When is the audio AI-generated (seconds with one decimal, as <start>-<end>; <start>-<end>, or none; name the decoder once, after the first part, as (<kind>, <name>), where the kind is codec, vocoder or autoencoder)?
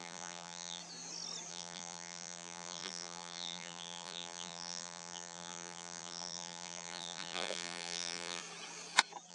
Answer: 0.0-0.8 (vocoder, BigVGAN v2); 1.5-8.4